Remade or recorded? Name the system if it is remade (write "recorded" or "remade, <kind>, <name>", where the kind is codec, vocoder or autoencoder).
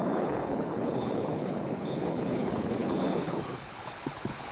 remade, codec, HILCodec